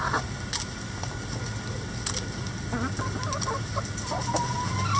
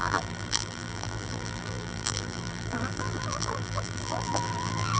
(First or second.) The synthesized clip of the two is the second